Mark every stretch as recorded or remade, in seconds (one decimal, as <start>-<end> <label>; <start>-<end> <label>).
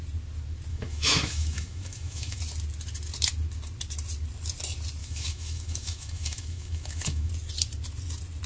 0.0-0.7 recorded; 0.7-2.4 remade; 2.4-5.0 recorded; 5.0-7.3 remade; 7.3-8.5 recorded